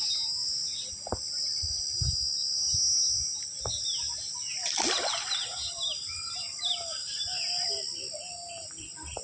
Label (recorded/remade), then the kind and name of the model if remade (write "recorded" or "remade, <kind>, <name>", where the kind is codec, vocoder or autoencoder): recorded